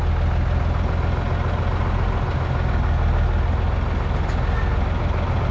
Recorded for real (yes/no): yes